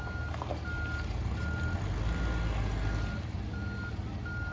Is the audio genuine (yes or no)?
yes